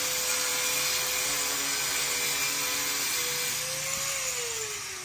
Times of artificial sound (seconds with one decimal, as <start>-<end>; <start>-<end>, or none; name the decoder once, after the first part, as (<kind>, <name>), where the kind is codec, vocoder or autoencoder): none

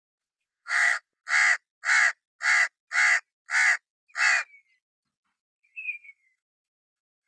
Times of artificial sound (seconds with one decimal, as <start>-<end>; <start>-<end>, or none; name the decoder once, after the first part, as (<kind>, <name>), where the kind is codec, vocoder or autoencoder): 0.0-1.2 (codec, SNAC); 5.5-7.3

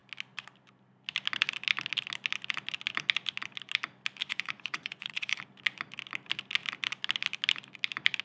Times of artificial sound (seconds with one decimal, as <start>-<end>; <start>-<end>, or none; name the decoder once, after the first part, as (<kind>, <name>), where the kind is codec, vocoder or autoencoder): 4.2-5.4 (vocoder, Vocos)

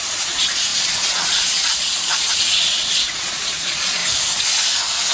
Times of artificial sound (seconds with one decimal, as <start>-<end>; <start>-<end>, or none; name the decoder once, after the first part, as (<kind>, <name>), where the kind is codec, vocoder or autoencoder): 0.0-4.0 (vocoder, Vocos)

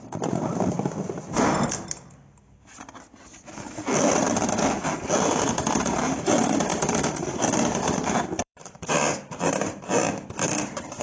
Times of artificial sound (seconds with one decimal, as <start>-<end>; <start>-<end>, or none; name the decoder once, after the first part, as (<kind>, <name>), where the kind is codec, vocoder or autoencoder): 0.0-0.5 (vocoder, BigVGAN v2); 5.2-11.0

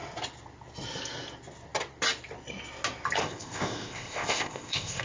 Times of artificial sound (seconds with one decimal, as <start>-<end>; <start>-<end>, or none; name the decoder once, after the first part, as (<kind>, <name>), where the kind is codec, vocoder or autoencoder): 3.2-5.0 (codec, ZipCodec)

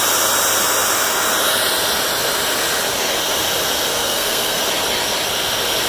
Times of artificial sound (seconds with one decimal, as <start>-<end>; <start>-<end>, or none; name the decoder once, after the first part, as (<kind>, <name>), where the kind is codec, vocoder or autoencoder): 3.9-4.6 (codec, SNAC)